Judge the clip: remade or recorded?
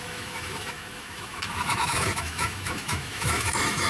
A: remade